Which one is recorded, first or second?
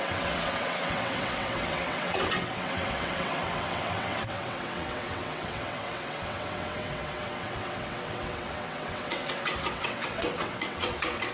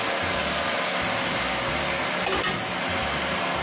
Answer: second